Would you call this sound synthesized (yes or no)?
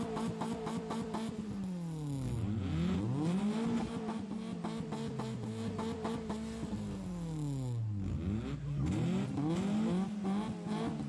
no